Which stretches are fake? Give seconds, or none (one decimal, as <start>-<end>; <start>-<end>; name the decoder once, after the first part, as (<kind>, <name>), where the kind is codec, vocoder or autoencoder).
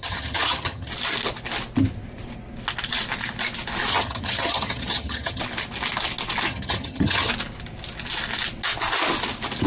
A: 0.0-0.9 (vocoder, HiFi-GAN); 3.9-5.4; 6.5-7.3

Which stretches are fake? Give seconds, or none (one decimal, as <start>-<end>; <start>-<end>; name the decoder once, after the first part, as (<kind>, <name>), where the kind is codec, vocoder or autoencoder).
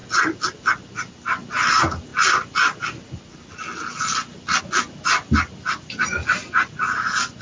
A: none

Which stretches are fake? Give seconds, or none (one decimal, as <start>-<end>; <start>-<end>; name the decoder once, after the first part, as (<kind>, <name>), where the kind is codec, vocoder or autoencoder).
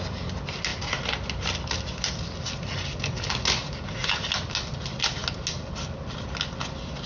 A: none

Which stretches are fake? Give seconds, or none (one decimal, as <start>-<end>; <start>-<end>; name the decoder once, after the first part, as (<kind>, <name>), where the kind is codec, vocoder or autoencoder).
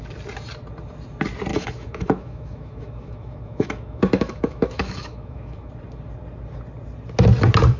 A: 1.5-5.7 (autoencoder, DAC-VAE)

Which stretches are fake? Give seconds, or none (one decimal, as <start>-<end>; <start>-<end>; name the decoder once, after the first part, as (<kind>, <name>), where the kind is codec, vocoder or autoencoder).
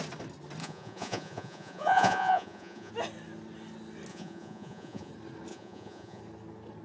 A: 0.6-2.9 (vocoder, Vocos); 4.1-5.1; 5.5-6.2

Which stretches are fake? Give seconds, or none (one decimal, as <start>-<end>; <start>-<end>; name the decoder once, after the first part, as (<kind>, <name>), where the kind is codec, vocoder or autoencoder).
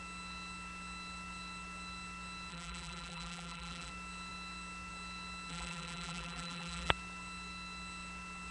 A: 2.5-3.9 (vocoder, BigVGAN v2); 5.5-6.9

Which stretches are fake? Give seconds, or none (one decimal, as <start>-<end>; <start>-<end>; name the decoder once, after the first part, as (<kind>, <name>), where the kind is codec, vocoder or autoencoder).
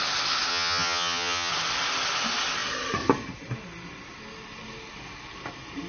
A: 0.5-1.5 (vocoder, HiFi-GAN)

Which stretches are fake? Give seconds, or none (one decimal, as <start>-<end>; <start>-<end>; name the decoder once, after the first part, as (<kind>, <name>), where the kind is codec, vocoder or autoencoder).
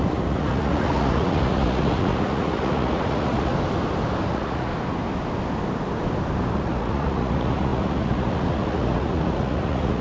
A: 0.0-3.5 (vocoder, Vocos); 4.3-4.7; 6.5-10.0